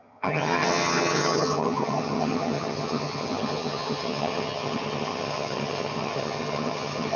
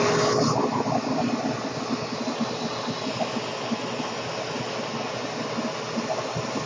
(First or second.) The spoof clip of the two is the first